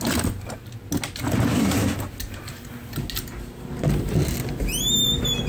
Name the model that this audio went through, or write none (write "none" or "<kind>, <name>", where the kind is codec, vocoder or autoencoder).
none